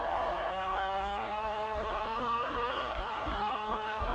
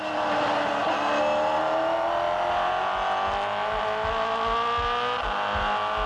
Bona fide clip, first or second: second